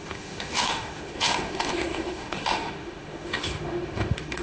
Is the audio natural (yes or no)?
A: no